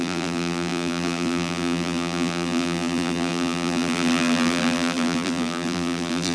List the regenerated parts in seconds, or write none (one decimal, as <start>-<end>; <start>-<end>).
0.0-6.3